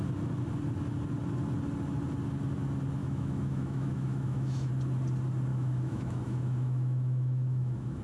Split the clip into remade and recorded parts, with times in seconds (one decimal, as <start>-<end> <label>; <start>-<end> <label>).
0.0-3.0 recorded; 3.0-4.7 remade; 4.7-5.5 recorded; 5.5-8.0 remade